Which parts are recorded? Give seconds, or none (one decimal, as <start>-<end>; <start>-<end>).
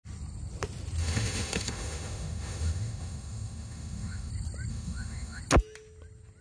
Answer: 0.0-1.0; 4.3-4.7; 5.4-6.4